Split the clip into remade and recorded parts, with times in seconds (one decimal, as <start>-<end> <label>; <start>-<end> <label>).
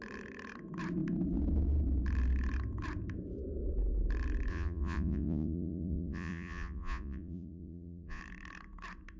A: 0.0-4.5 recorded; 4.5-8.2 remade; 8.2-9.2 recorded